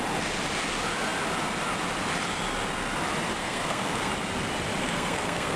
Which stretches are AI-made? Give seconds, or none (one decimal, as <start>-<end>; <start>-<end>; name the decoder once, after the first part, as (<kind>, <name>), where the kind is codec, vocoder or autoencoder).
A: 3.4-4.1 (codec, SNAC); 4.8-5.6